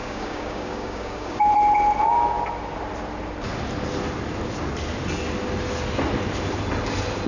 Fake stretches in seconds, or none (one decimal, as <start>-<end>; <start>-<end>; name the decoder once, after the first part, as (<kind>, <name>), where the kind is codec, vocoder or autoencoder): 0.0-1.5 (codec, DAC)